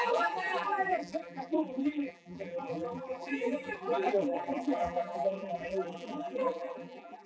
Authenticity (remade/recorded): remade